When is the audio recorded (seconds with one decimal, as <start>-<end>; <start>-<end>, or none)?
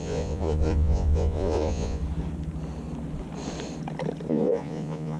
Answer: 2.0-4.3